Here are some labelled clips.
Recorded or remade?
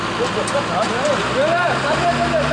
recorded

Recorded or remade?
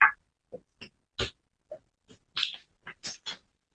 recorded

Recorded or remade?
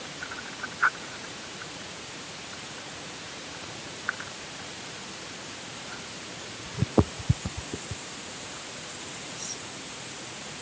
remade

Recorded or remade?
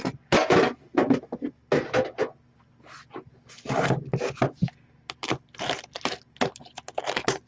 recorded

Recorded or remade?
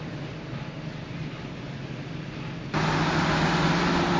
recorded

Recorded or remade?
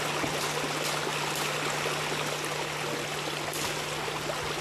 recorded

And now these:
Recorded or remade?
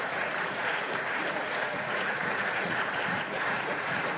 remade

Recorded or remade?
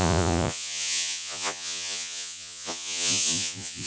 remade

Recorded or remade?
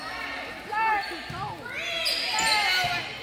recorded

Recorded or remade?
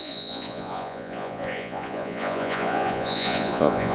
remade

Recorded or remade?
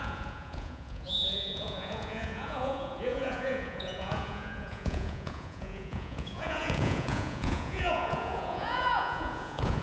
remade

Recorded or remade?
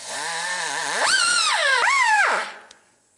remade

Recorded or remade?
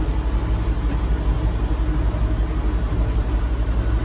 recorded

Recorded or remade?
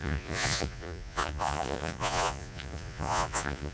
remade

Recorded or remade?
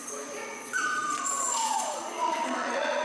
remade